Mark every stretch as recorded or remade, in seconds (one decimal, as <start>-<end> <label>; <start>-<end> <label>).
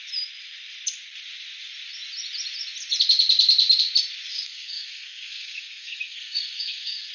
0.0-4.3 recorded; 4.3-7.1 remade